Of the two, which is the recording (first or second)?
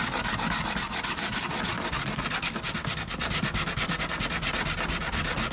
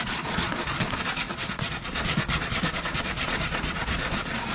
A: first